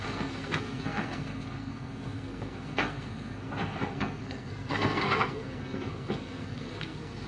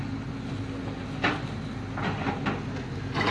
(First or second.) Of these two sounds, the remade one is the first